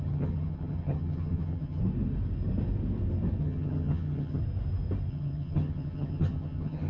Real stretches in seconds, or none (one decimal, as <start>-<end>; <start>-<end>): 1.8-3.4; 4.4-5.1